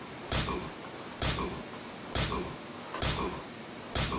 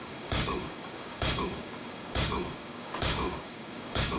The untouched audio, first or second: first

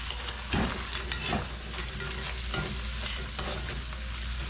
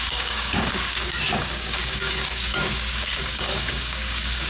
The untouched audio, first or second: first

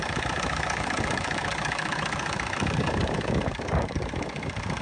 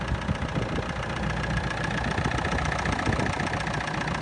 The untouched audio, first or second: second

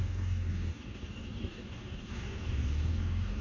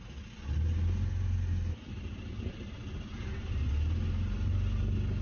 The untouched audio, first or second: second